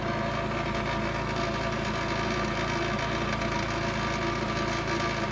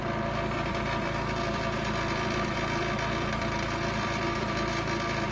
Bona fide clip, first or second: first